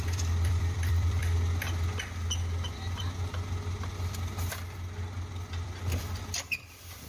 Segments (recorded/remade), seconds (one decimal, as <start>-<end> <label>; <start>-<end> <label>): 0.0-1.2 remade; 1.2-5.5 recorded; 5.5-7.1 remade